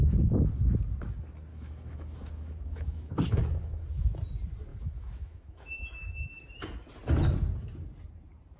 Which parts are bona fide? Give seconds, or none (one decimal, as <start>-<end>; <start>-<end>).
0.0-1.5; 3.8-4.7; 6.3-8.6